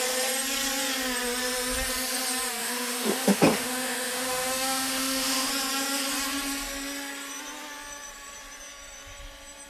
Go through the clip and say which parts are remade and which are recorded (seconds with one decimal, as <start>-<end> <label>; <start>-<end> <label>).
0.0-2.6 recorded; 2.6-5.5 remade; 5.5-9.7 recorded